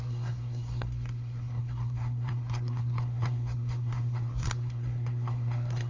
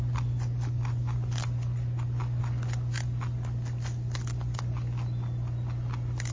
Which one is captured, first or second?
second